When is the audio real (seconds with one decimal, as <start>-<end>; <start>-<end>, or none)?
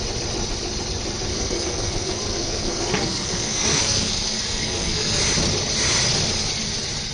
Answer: 0.0-1.3; 5.2-7.1